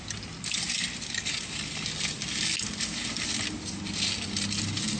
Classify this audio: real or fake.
real